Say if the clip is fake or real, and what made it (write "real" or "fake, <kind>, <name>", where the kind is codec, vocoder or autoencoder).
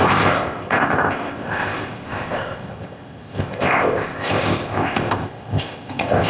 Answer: fake, codec, ZipCodec